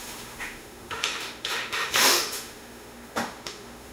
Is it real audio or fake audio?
fake